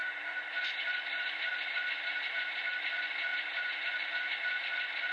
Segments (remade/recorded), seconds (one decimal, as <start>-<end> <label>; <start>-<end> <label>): 0.0-2.7 remade; 2.7-3.3 recorded; 3.3-3.9 remade; 3.9-5.1 recorded